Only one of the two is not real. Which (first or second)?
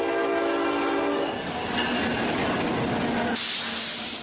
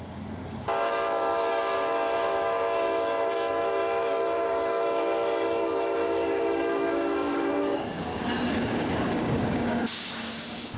second